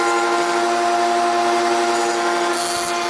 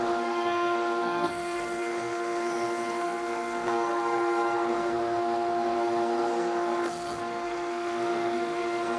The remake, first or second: second